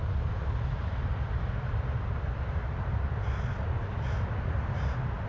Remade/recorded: recorded